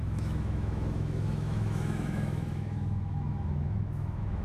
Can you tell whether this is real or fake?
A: fake